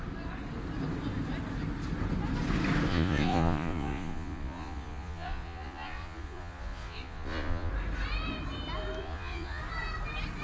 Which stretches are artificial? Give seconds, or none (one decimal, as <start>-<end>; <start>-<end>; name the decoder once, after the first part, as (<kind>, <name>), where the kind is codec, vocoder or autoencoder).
2.9-7.7 (vocoder, Vocos); 9.0-9.6